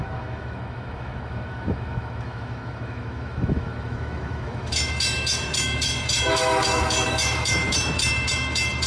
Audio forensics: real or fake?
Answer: fake